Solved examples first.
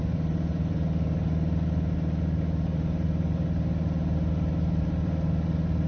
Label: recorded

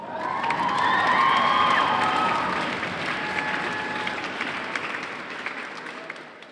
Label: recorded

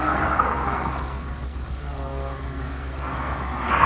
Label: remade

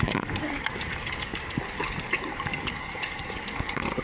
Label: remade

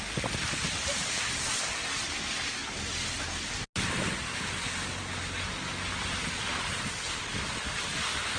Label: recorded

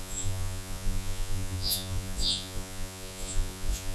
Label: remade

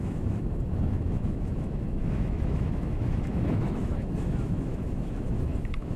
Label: remade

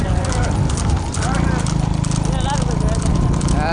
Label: recorded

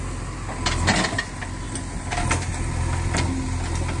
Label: recorded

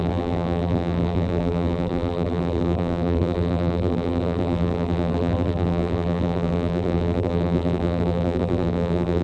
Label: remade